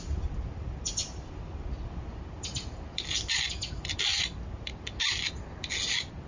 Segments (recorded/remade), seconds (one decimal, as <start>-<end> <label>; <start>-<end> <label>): 0.0-6.3 recorded